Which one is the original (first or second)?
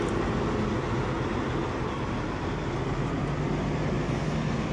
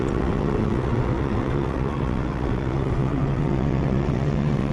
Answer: first